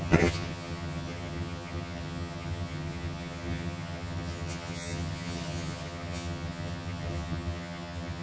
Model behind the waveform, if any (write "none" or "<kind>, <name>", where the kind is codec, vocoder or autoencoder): vocoder, HiFi-GAN